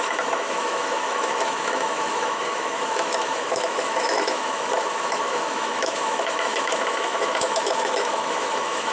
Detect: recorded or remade remade